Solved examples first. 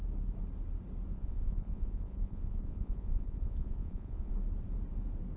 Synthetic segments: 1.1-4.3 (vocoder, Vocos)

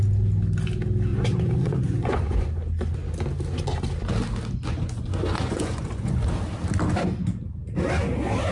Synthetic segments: 1.1-2.5 (vocoder, Vocos); 4.7-6.2